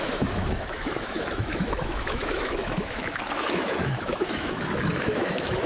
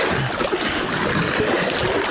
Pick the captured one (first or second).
second